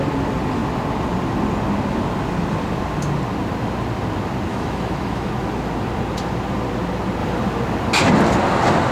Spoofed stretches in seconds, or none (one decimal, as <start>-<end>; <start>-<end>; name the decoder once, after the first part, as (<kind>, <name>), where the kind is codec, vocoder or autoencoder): 4.5-5.3 (autoencoder, DAC-VAE)